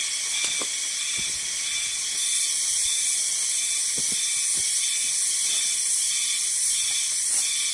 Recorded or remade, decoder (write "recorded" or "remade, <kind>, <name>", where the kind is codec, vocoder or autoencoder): recorded